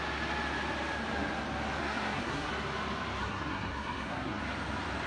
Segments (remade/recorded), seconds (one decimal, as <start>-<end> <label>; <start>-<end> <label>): 0.0-1.8 recorded; 1.8-2.5 remade; 2.5-3.2 recorded; 3.2-4.4 remade; 4.4-5.1 recorded